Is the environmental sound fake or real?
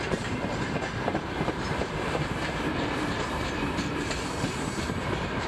fake